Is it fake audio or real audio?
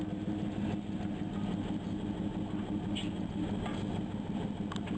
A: real